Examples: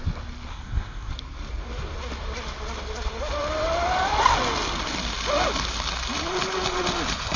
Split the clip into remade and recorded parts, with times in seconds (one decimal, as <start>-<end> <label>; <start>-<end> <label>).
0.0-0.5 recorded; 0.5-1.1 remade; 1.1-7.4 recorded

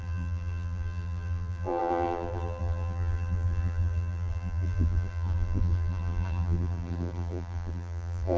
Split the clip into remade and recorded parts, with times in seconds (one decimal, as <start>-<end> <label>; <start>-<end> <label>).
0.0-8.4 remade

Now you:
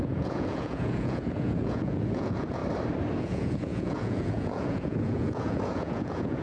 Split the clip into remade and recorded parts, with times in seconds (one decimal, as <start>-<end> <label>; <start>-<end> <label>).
0.0-2.6 remade; 2.6-3.2 recorded; 3.2-6.4 remade

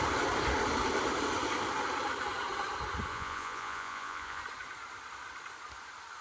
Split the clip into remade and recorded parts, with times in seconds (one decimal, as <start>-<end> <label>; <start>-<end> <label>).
0.0-3.1 recorded; 3.1-4.4 remade; 4.4-6.2 recorded